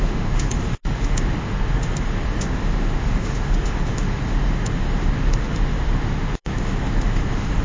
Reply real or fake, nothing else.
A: fake